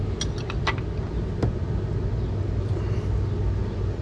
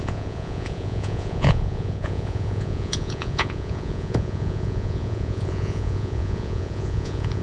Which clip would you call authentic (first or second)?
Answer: first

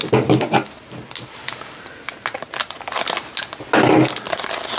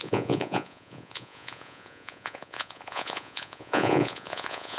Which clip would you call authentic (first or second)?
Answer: first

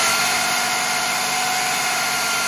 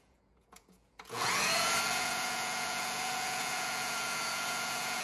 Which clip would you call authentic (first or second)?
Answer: first